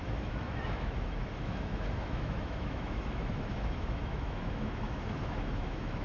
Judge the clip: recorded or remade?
remade